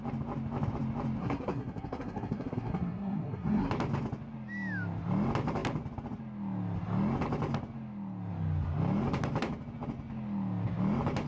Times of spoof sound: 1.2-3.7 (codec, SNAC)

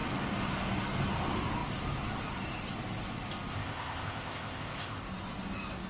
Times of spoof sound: 3.5-5.0 (codec, ZipCodec)

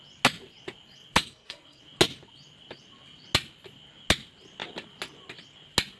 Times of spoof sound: 1.2-1.8 (codec, SNAC)

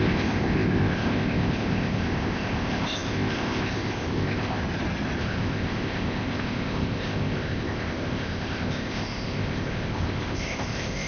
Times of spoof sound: 0.0-4.6 (codec, ZipCodec); 5.2-11.1

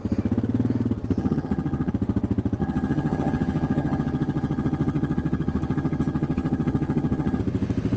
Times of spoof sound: 1.2-1.9 (vocoder, HiFi-GAN); 2.6-7.4

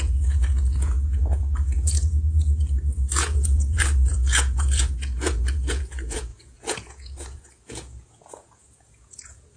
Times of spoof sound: 0.0-9.6 (vocoder, Vocos)

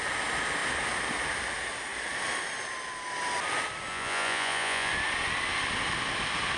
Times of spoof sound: 3.9-4.9 (vocoder, Vocos)